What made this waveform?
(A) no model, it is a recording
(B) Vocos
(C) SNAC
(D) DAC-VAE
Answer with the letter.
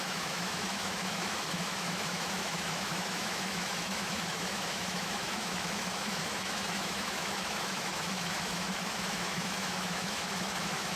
D